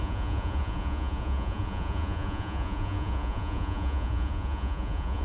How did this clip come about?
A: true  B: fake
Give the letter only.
B